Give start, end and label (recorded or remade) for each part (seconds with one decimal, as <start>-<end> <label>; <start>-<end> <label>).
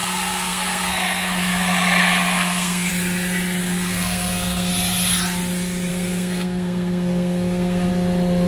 0.0-2.9 remade; 2.9-3.6 recorded; 3.6-4.7 remade; 4.7-5.9 recorded; 5.9-7.9 remade; 7.9-8.5 recorded